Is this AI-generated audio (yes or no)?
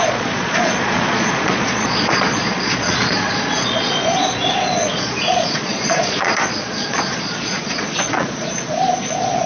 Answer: yes